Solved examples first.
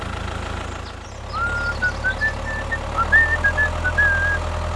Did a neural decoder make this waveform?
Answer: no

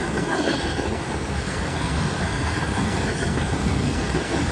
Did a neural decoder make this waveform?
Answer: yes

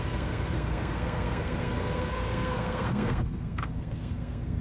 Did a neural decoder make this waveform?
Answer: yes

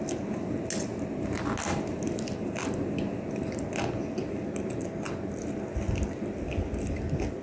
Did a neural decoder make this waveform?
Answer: no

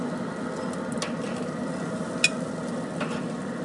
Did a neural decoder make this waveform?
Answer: no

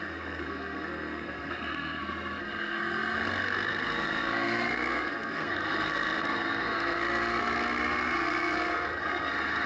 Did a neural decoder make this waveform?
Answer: yes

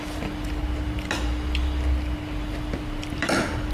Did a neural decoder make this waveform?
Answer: no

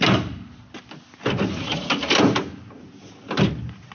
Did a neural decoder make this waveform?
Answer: no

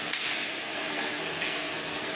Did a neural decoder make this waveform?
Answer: yes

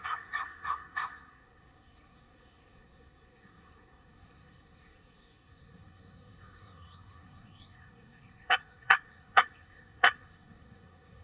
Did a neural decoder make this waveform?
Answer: yes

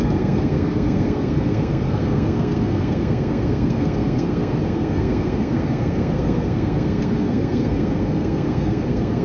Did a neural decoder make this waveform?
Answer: yes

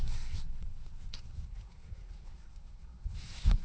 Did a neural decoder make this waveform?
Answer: yes